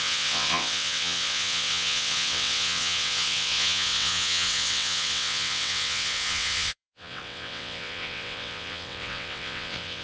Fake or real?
fake